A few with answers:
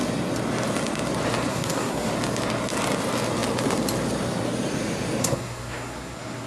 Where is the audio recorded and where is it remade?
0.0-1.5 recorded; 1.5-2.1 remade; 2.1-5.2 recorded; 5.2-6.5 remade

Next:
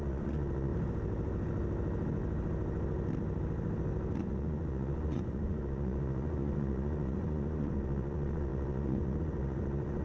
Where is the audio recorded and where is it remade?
0.0-0.7 remade; 0.7-4.2 recorded; 4.2-10.0 remade

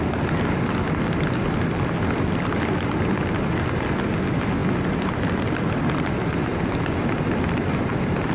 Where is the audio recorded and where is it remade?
0.0-8.3 recorded